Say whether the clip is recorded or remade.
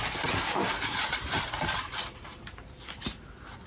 recorded